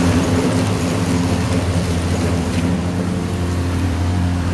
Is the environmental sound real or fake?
fake